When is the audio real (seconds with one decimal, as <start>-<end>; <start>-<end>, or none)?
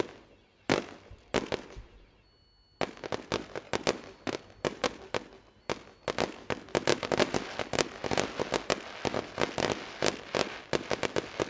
0.0-11.5